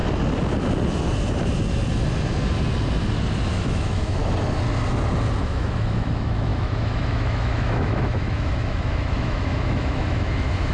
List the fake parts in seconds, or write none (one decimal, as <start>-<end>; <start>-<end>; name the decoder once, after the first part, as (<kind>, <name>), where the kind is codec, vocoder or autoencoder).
3.5-4.2 (autoencoder, DAC-VAE); 5.4-10.7